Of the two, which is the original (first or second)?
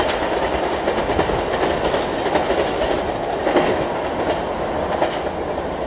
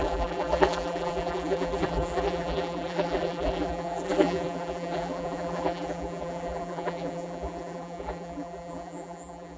first